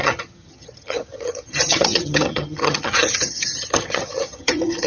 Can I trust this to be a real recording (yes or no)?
no